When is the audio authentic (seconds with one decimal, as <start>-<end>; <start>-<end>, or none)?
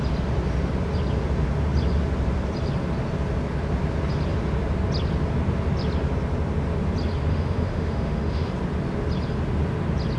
0.0-7.3; 8.5-10.2